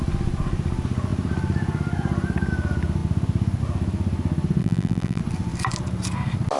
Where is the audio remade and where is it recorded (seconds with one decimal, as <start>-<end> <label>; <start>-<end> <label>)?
0.0-4.6 recorded; 4.6-5.2 remade; 5.2-6.6 recorded